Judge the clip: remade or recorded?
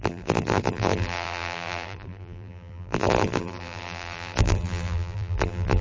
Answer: remade